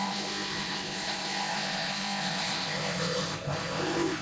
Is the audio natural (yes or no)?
no